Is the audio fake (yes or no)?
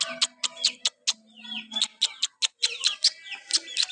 no